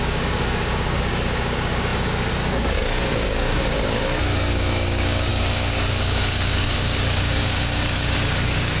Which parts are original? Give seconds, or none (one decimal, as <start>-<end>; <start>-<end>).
none